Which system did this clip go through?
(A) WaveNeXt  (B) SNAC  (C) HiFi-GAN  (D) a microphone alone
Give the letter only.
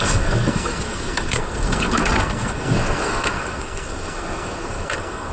B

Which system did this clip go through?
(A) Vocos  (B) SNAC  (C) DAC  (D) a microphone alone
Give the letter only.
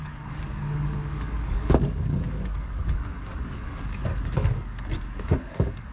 C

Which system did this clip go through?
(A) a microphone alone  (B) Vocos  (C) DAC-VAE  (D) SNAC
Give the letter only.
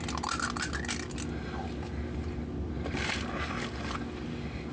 A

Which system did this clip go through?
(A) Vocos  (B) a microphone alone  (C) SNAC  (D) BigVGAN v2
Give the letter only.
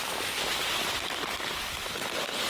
B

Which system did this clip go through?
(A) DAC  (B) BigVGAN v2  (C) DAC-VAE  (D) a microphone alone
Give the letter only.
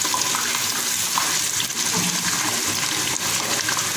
D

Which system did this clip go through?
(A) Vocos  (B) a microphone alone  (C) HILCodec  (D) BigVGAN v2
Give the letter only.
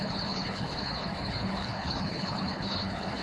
C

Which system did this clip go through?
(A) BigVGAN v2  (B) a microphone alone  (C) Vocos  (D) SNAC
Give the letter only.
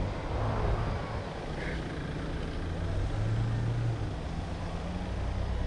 B